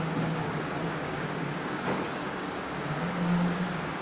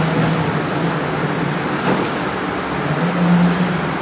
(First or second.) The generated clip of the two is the first